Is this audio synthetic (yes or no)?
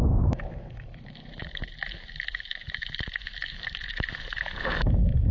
yes